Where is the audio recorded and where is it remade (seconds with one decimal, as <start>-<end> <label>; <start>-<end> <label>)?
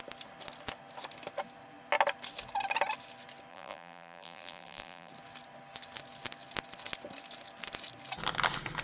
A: 0.0-3.5 recorded; 3.5-5.1 remade; 5.1-8.8 recorded